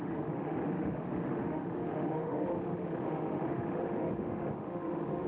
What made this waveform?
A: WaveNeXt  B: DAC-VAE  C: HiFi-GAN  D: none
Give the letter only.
B